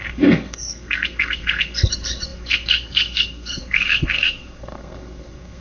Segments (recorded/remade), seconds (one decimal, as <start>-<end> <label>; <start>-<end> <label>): 0.0-5.6 remade